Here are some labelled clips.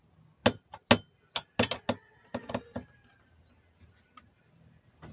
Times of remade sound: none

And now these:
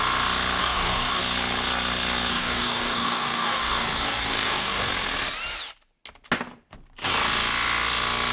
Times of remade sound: 0.6-1.2; 2.3-4.9